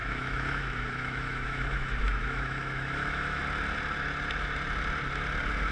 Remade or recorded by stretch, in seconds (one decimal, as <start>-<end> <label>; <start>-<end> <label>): 0.0-3.4 remade; 3.4-5.7 recorded